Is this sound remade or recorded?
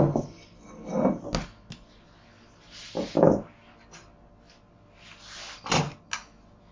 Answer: recorded